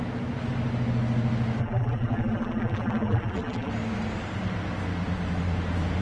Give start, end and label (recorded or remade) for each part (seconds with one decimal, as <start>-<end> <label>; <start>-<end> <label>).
0.0-1.6 recorded; 1.6-3.7 remade; 3.7-6.0 recorded